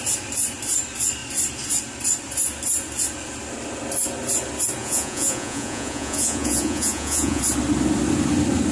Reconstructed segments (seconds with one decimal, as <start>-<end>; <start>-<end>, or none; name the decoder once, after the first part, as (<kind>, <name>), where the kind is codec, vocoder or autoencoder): 4.8-7.4 (vocoder, Vocos)